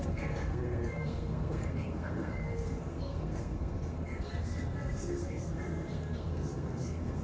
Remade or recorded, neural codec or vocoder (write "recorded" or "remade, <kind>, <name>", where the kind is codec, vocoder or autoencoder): remade, codec, SNAC